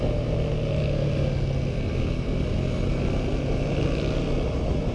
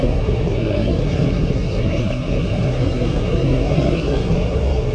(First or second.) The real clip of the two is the first